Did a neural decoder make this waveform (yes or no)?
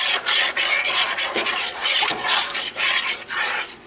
yes